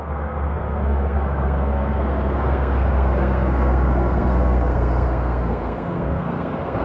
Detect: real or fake fake